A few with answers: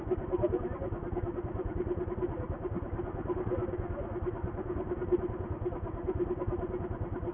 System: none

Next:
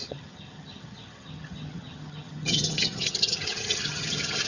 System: vocoder, HiFi-GAN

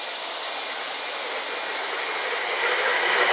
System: none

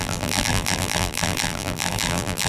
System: vocoder, BigVGAN v2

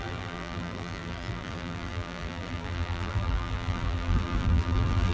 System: vocoder, BigVGAN v2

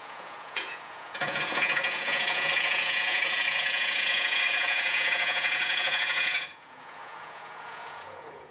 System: vocoder, Vocos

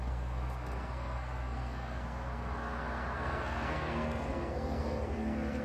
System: codec, SNAC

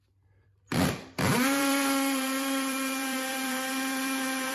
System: vocoder, BigVGAN v2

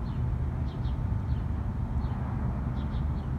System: none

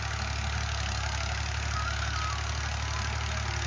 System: none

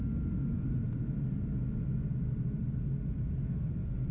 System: none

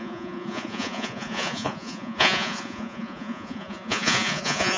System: vocoder, Vocos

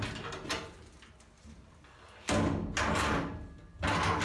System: none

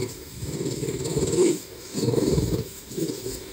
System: codec, DAC